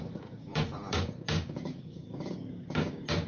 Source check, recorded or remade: remade